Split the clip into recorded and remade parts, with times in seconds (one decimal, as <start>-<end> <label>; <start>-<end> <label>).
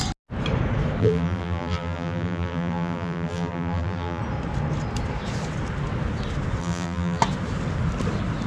0.0-1.0 recorded; 1.0-4.2 remade; 4.2-6.6 recorded; 6.6-7.2 remade; 7.2-8.5 recorded